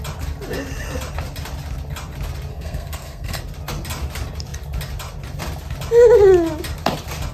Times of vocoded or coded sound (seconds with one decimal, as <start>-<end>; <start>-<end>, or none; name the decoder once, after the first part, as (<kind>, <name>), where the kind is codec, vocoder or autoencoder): 2.5-3.4 (codec, SNAC)